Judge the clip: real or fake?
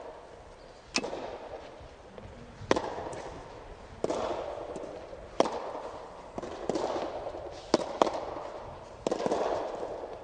real